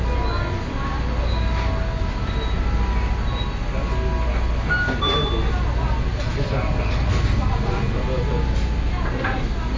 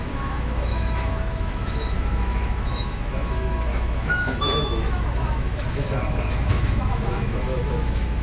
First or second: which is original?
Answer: first